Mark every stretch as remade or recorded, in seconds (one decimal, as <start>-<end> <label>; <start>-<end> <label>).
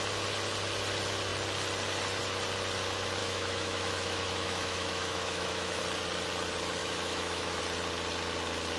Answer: 0.0-3.2 recorded; 3.2-5.8 remade; 5.8-6.8 recorded; 6.8-7.6 remade; 7.6-8.8 recorded